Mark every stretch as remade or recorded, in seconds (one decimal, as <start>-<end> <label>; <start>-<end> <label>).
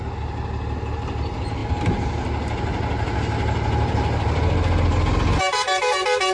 0.0-6.3 recorded